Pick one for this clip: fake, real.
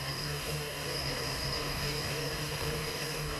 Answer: fake